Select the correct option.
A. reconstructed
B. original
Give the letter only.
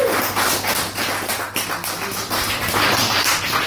B